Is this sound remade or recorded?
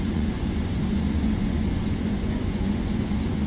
remade